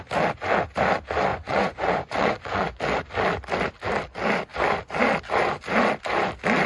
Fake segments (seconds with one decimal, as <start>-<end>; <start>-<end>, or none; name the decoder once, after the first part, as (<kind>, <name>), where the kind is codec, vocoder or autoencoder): 1.3-2.8 (vocoder, Vocos)